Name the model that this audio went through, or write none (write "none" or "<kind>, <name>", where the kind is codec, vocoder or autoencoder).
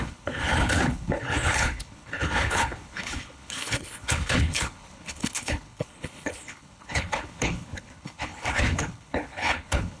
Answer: codec, HILCodec